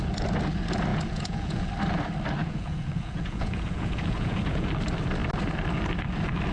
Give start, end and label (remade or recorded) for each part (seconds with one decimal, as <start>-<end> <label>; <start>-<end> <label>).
0.0-0.9 recorded; 0.9-1.7 remade; 1.7-2.4 recorded; 2.4-4.7 remade; 4.7-6.5 recorded